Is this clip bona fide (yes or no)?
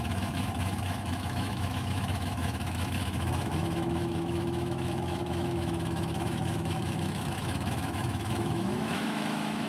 no